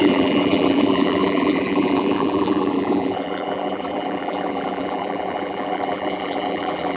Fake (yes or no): yes